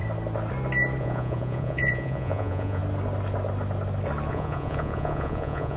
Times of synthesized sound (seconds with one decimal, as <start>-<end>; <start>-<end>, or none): 1.0-2.8; 4.3-5.8